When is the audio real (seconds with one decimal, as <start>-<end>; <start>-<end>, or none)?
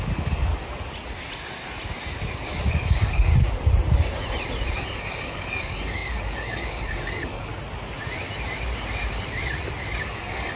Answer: 0.5-2.7; 3.3-4.8; 7.5-10.0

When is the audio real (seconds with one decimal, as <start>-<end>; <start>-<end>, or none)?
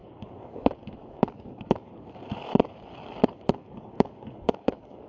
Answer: none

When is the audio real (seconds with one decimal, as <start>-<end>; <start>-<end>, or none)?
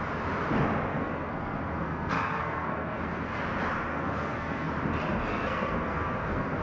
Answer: 0.0-0.9; 3.4-3.9; 4.7-5.3